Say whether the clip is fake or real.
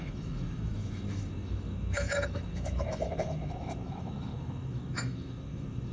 fake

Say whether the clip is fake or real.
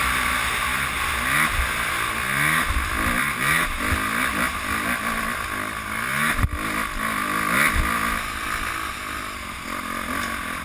real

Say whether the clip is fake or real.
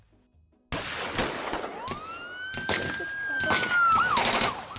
real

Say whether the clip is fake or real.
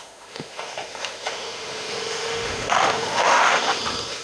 fake